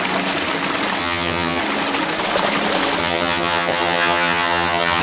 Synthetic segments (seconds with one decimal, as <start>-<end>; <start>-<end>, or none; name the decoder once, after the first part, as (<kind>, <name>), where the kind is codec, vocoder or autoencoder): 1.0-1.6 (vocoder, HiFi-GAN); 3.0-5.0